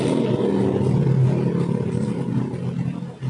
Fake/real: real